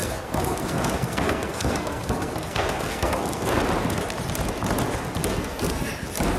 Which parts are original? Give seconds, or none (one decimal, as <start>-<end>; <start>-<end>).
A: 3.6-5.2; 5.9-6.4